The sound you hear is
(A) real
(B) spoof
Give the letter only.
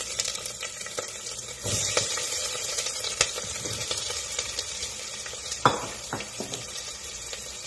B